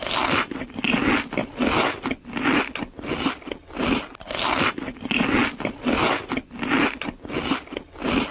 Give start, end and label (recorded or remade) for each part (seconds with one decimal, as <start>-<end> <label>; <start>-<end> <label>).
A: 0.0-8.3 recorded